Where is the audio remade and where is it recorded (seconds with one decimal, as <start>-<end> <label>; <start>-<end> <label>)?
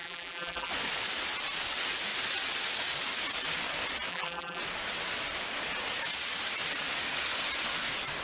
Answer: 0.0-0.7 remade; 0.7-4.1 recorded; 4.1-4.6 remade; 4.6-8.2 recorded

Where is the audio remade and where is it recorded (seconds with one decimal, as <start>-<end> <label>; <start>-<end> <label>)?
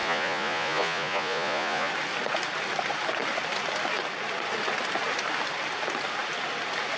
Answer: 0.0-1.9 remade; 1.9-7.0 recorded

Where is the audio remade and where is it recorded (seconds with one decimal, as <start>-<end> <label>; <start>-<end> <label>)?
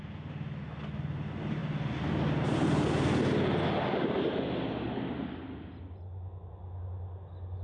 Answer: 0.0-7.6 recorded